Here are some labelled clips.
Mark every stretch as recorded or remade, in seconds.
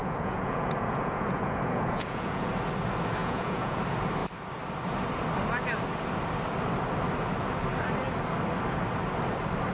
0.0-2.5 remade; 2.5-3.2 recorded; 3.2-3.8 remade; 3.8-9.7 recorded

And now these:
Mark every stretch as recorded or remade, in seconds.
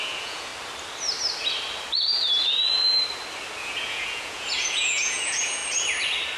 0.0-0.5 remade; 0.5-3.6 recorded; 3.6-5.6 remade; 5.6-6.4 recorded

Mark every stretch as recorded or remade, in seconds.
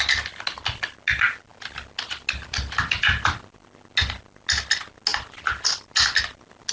0.0-6.7 recorded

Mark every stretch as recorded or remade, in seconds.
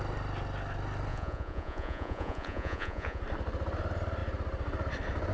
0.0-1.1 recorded; 1.1-3.2 remade; 3.2-5.3 recorded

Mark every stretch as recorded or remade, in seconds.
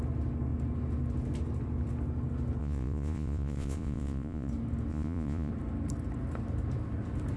0.0-2.6 recorded; 2.6-4.5 remade; 4.5-4.9 recorded; 4.9-5.5 remade; 5.5-7.4 recorded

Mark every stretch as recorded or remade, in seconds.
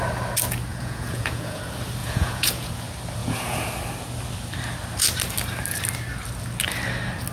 0.0-0.7 recorded; 0.7-1.6 remade; 1.6-2.0 recorded; 2.0-2.7 remade; 2.7-3.2 recorded; 3.2-3.7 remade; 3.7-7.3 recorded